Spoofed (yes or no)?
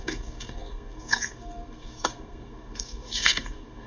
yes